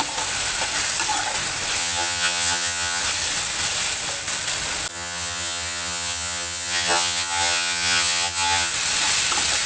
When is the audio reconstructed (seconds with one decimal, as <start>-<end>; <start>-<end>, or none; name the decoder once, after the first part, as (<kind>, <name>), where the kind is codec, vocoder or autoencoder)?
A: 1.8-3.0 (vocoder, HiFi-GAN); 4.9-8.7